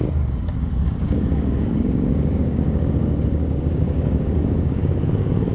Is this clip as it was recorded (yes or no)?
no